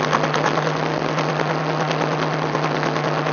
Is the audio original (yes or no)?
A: yes